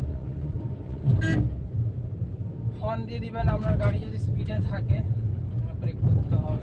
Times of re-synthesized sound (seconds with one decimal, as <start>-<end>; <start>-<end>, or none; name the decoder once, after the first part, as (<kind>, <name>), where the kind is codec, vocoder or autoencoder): 0.0-1.1 (vocoder, Vocos); 4.5-5.3